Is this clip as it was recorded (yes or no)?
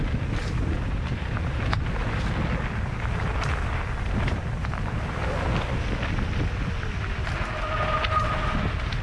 yes